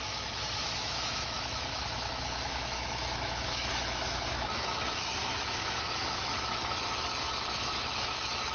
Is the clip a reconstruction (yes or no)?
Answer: yes